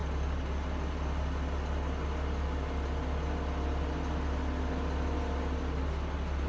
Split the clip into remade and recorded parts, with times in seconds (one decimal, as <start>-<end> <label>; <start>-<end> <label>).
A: 0.0-6.5 recorded